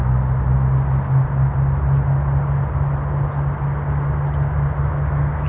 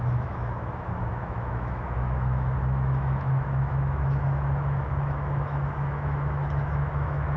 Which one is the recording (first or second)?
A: first